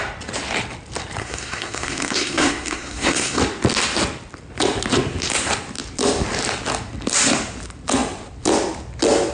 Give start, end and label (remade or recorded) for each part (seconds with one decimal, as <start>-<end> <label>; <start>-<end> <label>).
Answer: 0.0-1.2 recorded; 1.2-3.4 remade; 3.4-9.3 recorded